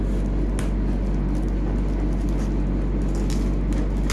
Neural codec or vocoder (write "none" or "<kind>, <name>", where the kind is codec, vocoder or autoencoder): none